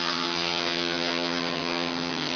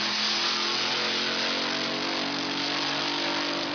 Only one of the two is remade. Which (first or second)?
first